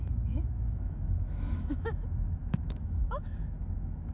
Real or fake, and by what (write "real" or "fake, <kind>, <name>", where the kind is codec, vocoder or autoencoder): fake, autoencoder, DAC-VAE